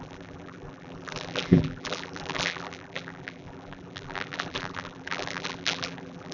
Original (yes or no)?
no